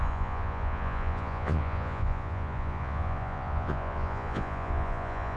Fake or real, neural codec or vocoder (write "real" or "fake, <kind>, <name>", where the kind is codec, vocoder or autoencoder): fake, vocoder, Vocos